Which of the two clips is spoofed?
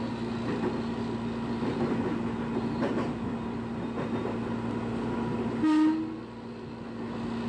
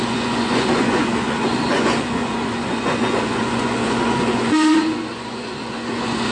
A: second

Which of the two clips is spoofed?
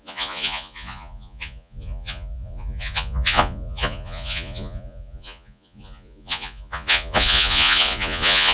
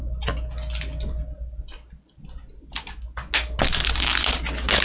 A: first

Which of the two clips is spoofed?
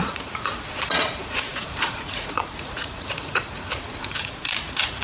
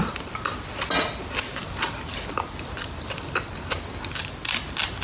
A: first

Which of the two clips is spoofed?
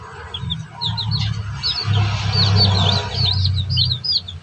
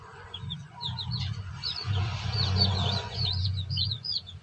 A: second